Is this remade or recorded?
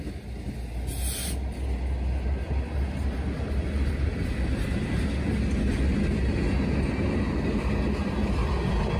recorded